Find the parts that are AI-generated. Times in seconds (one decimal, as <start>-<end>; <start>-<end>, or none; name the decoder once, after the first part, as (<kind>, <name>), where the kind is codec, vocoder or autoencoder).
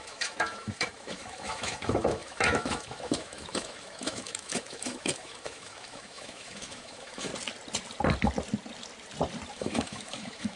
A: 0.0-7.3 (autoencoder, DAC-VAE); 9.5-10.6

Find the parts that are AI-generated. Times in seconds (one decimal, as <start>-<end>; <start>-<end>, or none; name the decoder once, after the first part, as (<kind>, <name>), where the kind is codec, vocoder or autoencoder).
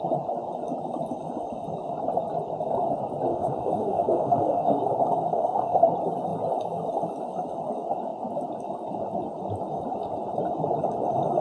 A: 3.3-4.8 (autoencoder, DAC-VAE); 5.3-5.8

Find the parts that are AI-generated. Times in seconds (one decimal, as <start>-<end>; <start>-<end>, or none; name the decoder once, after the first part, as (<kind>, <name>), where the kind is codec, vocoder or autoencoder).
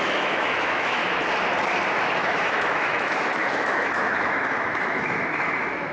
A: 0.0-1.0 (autoencoder, DAC-VAE); 1.9-5.9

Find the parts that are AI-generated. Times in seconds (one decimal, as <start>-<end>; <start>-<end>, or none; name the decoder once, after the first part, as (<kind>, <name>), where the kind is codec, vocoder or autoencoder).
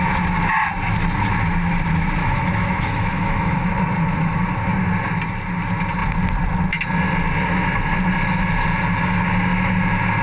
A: 2.2-3.7 (autoencoder, DAC-VAE)